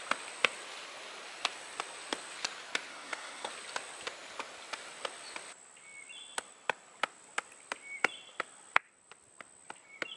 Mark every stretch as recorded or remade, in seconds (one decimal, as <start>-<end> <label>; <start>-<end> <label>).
0.0-2.9 recorded; 2.9-3.5 remade; 3.5-10.2 recorded